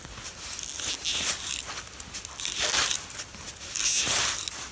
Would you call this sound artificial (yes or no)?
no